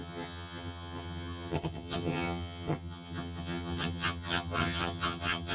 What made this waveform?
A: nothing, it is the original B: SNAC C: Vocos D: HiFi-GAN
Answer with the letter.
D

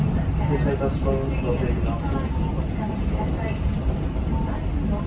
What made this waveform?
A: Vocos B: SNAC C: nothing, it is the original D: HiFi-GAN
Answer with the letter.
C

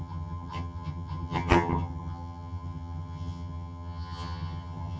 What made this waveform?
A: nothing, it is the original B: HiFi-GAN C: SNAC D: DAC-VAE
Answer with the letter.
B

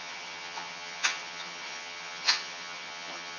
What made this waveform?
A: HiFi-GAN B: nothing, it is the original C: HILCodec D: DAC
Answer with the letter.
A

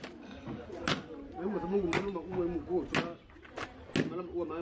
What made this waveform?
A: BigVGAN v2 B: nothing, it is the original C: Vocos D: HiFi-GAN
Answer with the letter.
B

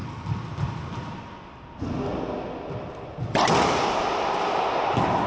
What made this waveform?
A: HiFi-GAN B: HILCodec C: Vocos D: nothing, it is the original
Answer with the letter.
D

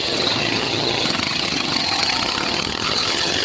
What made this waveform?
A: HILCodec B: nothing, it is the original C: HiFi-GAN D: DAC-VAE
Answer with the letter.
C